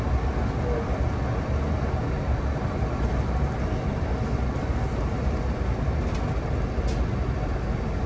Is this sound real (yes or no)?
yes